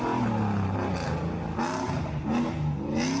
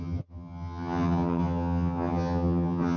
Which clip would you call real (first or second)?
first